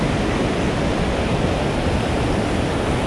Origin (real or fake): real